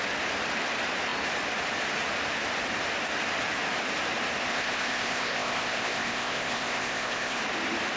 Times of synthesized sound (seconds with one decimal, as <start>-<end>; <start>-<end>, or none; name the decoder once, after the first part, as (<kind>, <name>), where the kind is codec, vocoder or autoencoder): 4.5-7.4 (codec, ZipCodec)